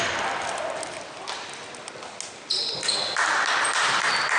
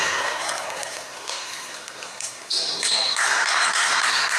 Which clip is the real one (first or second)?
first